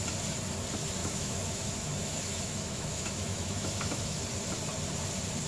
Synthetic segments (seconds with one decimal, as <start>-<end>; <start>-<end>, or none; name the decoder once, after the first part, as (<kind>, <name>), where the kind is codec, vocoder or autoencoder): 1.0-4.2 (autoencoder, DAC-VAE)